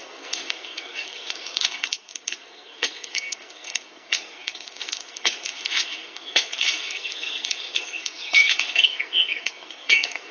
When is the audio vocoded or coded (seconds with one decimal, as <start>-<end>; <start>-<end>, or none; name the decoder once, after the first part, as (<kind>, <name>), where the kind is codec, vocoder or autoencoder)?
0.0-10.3 (codec, SNAC)